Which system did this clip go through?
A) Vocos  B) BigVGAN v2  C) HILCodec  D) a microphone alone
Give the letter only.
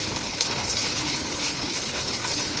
C